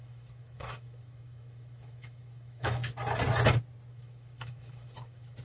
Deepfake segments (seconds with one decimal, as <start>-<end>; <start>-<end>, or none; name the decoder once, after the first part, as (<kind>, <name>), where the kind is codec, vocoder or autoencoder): 0.0-2.8 (autoencoder, DAC-VAE); 3.9-5.4